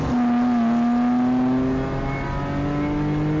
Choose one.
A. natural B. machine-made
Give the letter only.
A